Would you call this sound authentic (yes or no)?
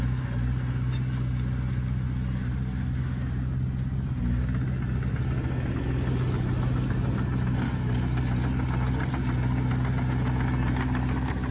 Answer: yes